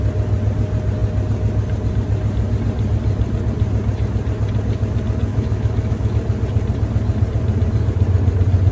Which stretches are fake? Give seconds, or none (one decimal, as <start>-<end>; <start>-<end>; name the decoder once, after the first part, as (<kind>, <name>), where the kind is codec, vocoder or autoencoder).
5.3-6.1 (autoencoder, DAC-VAE)